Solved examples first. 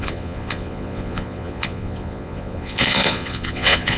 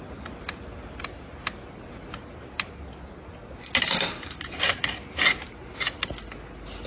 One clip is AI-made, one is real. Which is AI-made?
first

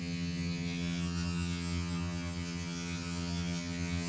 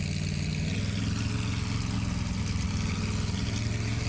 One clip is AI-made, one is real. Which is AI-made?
first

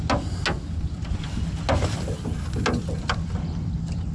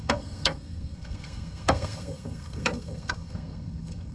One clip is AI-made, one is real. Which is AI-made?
second